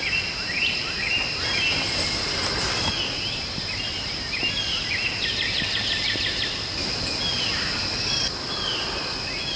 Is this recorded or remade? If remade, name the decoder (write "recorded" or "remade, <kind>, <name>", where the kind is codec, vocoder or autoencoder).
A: recorded